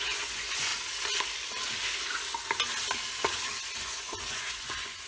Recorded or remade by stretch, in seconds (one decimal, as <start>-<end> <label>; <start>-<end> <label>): 0.0-0.7 remade; 0.7-3.8 recorded; 3.8-5.1 remade